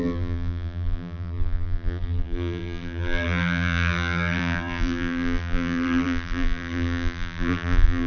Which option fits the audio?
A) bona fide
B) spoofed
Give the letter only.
B